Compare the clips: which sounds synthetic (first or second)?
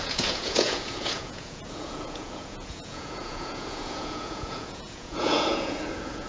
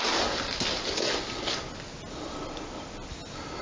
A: first